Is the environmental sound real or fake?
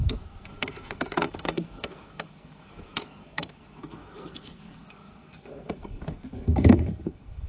fake